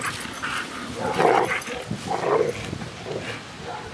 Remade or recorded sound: recorded